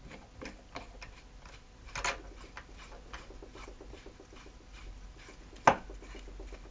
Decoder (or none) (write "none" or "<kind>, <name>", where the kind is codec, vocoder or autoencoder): none